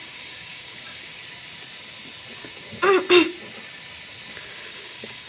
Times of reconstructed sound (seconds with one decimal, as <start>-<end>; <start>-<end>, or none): 0.0-1.2; 4.3-5.3